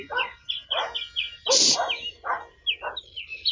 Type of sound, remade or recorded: recorded